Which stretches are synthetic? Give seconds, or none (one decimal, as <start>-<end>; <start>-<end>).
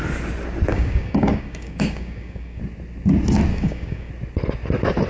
0.7-2.6; 3.5-4.1